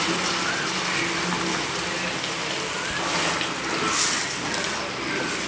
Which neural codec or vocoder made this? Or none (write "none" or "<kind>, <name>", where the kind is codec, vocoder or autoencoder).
none